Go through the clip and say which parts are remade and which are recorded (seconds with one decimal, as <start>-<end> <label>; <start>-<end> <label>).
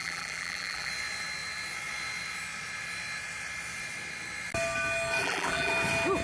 0.0-0.9 remade; 0.9-5.2 recorded; 5.2-5.7 remade; 5.7-6.2 recorded